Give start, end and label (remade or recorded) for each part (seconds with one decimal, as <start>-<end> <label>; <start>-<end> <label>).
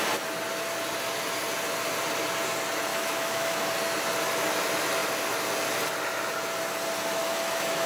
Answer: 0.0-2.9 recorded; 2.9-3.6 remade; 3.6-7.2 recorded; 7.2-7.9 remade